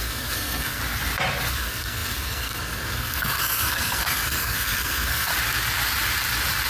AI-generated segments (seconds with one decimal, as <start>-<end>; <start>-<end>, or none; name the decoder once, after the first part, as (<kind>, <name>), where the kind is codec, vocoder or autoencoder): 0.0-0.8 (codec, SNAC); 1.5-5.3